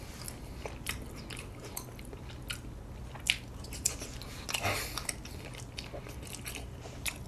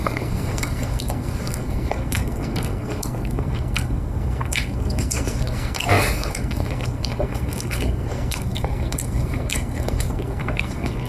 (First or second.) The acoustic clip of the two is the first